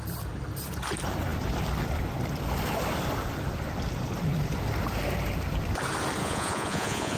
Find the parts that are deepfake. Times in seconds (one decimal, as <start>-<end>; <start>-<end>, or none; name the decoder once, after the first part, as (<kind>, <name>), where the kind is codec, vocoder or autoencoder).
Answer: 6.2-7.2 (vocoder, Vocos)